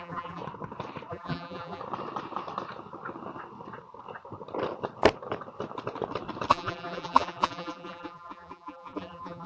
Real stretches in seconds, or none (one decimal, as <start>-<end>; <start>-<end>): 0.4-1.1; 1.8-6.5